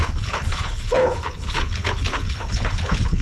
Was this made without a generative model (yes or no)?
no